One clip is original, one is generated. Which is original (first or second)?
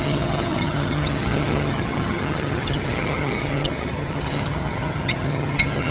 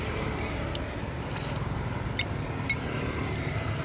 second